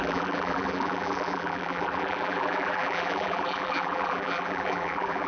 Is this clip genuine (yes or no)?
no